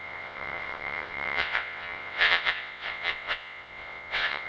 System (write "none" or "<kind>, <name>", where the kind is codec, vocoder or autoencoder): vocoder, WaveNeXt